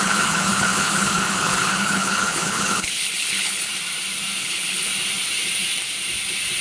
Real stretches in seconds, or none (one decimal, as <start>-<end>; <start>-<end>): 3.7-4.4; 4.9-6.6